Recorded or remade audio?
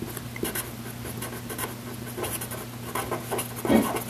recorded